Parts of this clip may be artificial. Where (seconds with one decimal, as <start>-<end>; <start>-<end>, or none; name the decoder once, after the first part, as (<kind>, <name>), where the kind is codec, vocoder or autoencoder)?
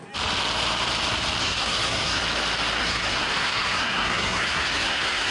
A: 1.4-2.2 (codec, SNAC); 2.8-5.3